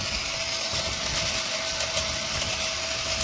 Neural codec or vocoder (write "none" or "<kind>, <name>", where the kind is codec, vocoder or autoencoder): none